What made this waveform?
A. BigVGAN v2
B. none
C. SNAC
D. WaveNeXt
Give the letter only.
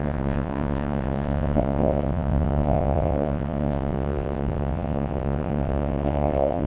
D